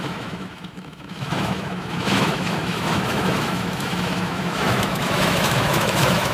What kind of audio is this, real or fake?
fake